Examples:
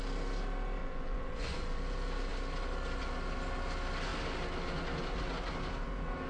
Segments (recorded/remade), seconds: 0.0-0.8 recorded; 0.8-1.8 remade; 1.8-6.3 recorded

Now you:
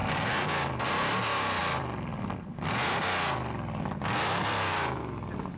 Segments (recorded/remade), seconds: 0.0-0.8 remade; 0.8-1.6 recorded; 1.6-5.0 remade; 5.0-5.6 recorded